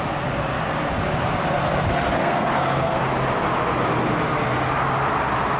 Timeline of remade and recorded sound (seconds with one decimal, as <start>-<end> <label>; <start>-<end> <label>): 0.0-2.2 recorded; 2.2-3.0 remade; 3.0-5.6 recorded